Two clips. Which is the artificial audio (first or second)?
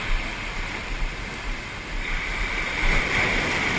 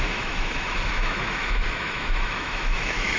second